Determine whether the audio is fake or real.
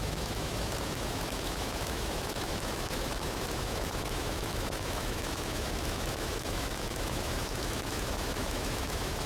fake